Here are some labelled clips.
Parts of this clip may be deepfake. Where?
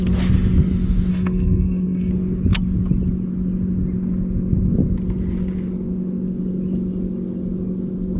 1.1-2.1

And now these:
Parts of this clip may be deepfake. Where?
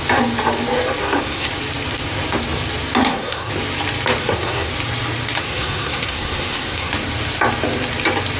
1.0-1.5; 3.0-3.5; 4.2-4.7; 5.4-6.9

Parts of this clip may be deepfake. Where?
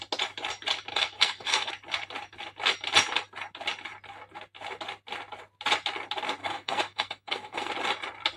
0.9-1.7; 6.4-7.7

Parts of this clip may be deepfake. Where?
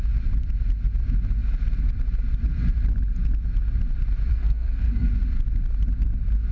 4.3-5.1